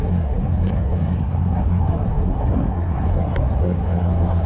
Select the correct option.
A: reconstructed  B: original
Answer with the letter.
A